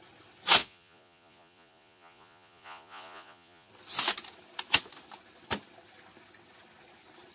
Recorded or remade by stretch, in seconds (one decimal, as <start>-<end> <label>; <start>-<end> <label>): 0.0-0.6 recorded; 0.6-3.7 remade; 3.7-7.3 recorded